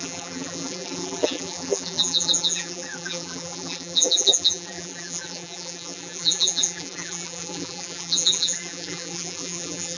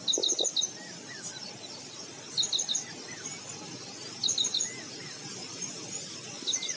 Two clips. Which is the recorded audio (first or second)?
second